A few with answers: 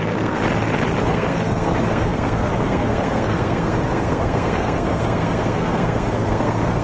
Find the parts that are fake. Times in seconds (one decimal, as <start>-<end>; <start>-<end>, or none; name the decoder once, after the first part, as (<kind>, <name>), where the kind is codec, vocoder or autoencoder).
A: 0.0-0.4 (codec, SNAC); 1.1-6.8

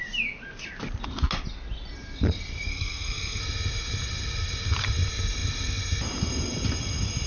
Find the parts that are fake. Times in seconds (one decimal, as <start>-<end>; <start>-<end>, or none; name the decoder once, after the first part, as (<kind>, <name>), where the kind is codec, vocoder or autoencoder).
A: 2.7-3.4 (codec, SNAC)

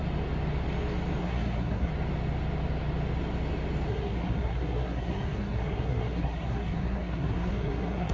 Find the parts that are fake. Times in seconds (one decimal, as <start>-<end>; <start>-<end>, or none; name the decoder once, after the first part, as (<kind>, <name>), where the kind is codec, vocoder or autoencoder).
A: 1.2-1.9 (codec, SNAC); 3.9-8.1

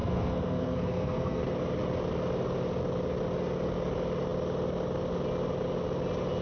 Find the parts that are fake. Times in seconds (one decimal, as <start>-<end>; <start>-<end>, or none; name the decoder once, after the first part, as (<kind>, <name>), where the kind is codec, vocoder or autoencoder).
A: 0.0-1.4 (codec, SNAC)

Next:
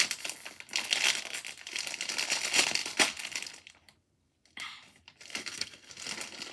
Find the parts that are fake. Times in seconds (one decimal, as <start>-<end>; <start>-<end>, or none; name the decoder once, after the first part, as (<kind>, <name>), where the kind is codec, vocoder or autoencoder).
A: 5.4-5.9 (codec, SNAC)